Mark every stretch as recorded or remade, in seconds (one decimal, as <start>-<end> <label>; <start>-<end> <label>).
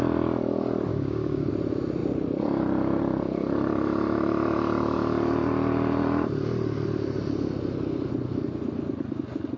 0.0-0.9 recorded; 0.9-1.5 remade; 1.5-9.6 recorded